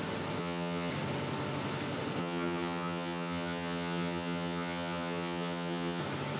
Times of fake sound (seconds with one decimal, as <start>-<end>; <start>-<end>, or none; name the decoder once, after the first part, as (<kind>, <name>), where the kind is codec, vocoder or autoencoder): 0.4-0.9 (vocoder, HiFi-GAN); 2.2-6.0